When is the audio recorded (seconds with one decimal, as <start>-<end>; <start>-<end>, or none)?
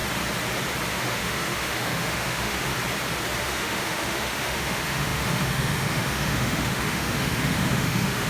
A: 0.0-0.9; 2.7-3.4